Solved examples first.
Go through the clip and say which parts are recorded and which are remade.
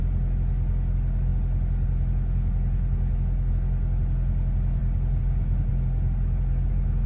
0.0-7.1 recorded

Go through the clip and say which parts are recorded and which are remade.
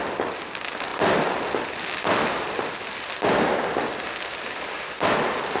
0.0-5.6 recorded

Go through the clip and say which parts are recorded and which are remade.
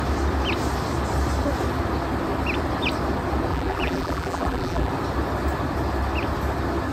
0.0-3.5 recorded; 3.5-4.9 remade; 4.9-6.9 recorded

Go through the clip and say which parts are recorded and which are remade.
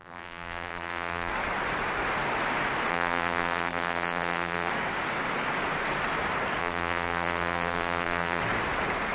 0.0-1.3 remade; 1.3-2.9 recorded; 2.9-4.7 remade; 4.7-6.6 recorded; 6.6-8.4 remade; 8.4-9.1 recorded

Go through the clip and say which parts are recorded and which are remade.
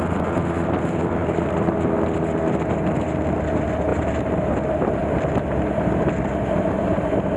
0.0-3.9 recorded; 3.9-4.5 remade; 4.5-7.4 recorded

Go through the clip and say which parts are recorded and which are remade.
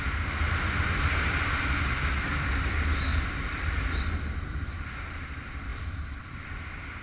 0.0-3.1 recorded; 3.1-3.7 remade; 3.7-5.7 recorded; 5.7-6.2 remade; 6.2-7.0 recorded